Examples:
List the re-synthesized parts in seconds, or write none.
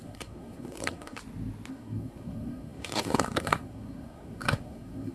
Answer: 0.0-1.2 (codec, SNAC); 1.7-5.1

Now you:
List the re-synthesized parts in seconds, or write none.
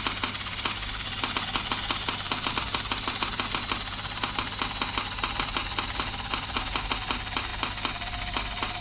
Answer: none